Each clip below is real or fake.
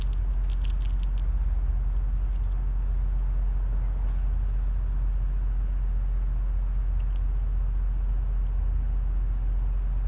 real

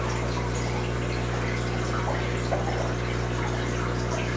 real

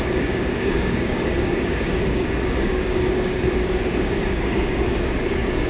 fake